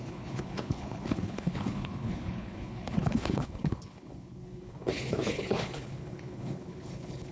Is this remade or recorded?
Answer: remade